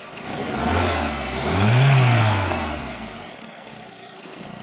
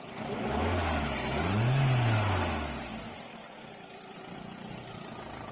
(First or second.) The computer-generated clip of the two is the first